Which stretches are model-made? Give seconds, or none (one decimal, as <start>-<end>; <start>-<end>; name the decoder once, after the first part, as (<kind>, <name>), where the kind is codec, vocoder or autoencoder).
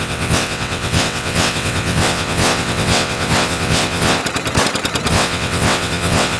0.0-4.2 (vocoder, WaveNeXt); 5.1-6.4